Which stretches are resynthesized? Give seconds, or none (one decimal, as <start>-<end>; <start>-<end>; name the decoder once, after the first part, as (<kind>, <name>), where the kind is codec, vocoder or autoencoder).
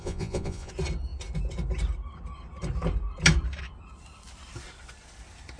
0.0-0.7 (vocoder, Vocos)